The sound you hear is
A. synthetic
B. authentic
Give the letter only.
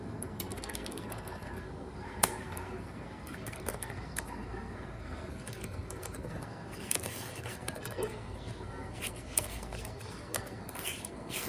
A